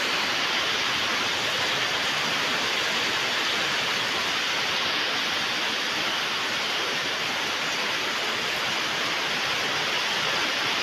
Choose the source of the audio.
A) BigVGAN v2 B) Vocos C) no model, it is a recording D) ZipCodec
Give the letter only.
C